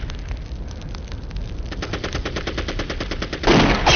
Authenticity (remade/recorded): recorded